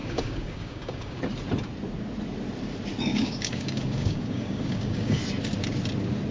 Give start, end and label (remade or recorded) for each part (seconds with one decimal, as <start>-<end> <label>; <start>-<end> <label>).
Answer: 0.0-1.2 remade; 1.2-3.1 recorded; 3.1-5.2 remade; 5.2-6.3 recorded